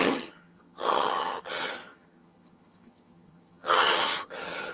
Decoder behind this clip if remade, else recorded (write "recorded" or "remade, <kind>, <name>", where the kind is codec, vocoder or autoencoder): remade, vocoder, HiFi-GAN